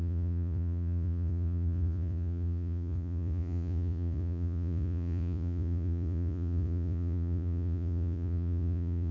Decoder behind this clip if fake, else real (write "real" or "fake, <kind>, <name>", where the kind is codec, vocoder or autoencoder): fake, vocoder, Vocos